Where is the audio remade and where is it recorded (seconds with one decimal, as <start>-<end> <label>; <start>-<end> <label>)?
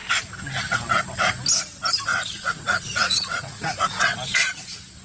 0.0-2.1 recorded; 2.1-3.9 remade; 3.9-5.0 recorded